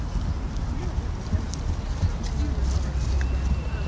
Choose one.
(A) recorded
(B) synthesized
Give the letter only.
A